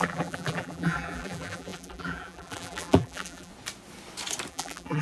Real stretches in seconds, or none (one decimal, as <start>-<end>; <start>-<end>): 3.5-4.5